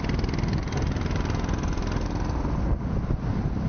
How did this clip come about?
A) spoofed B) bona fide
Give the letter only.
B